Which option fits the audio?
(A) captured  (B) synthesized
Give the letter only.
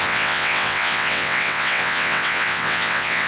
B